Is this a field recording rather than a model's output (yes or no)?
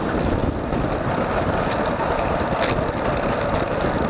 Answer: yes